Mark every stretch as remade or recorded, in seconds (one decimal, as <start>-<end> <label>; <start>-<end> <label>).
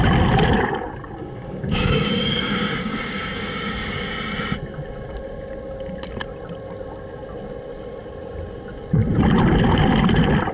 0.0-1.2 recorded; 1.2-4.1 remade; 4.1-10.5 recorded